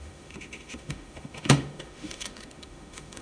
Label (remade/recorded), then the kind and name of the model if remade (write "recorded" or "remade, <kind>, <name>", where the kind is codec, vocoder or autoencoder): remade, autoencoder, DAC-VAE